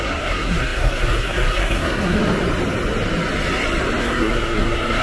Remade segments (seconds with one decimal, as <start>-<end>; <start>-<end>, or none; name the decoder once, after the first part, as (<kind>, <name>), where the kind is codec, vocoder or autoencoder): 0.0-2.2 (codec, SNAC); 4.0-5.0